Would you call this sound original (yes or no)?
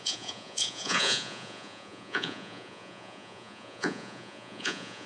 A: no